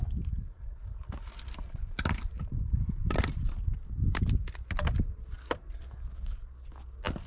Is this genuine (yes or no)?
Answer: yes